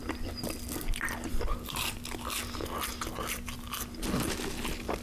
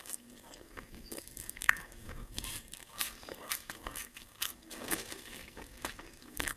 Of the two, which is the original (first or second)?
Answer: first